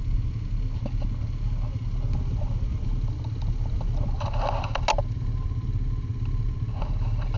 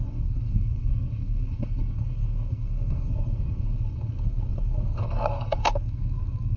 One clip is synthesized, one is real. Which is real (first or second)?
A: first